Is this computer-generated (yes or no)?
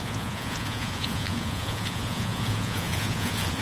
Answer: yes